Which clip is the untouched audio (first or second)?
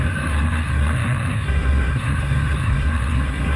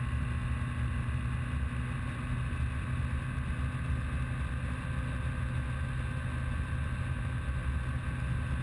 second